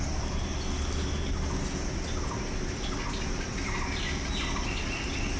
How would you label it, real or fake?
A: real